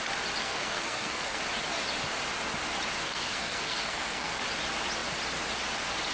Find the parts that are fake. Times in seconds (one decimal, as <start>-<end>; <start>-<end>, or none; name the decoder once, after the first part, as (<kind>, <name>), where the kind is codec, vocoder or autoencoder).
0.4-1.4 (codec, SNAC); 3.0-4.4